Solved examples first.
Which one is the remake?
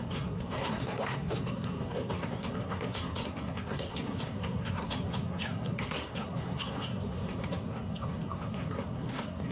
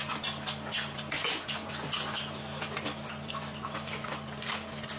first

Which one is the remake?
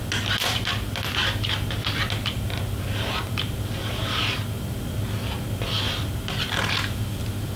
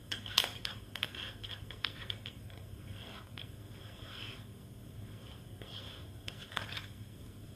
second